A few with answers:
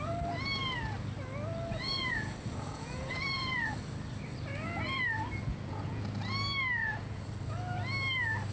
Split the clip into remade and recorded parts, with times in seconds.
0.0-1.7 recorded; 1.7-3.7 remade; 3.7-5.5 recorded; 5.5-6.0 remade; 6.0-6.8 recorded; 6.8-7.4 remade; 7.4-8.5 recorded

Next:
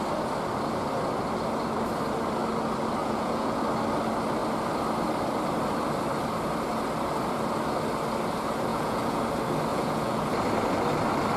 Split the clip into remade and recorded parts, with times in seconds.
0.0-3.0 recorded; 3.0-3.6 remade; 3.6-8.7 recorded; 8.7-9.2 remade; 9.2-9.7 recorded; 9.7-10.3 remade; 10.3-11.4 recorded

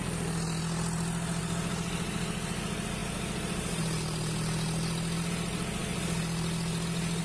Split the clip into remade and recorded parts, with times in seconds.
0.0-7.2 recorded

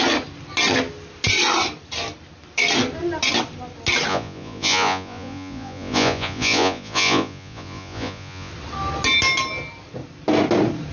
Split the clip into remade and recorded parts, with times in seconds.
0.0-4.1 recorded; 4.1-8.5 remade; 8.5-10.9 recorded

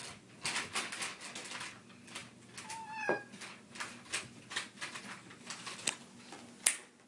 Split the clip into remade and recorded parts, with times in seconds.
0.0-7.1 recorded